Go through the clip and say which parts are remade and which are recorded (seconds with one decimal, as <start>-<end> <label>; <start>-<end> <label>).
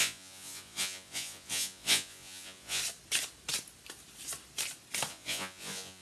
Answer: 0.0-2.8 remade; 2.8-5.1 recorded; 5.1-6.0 remade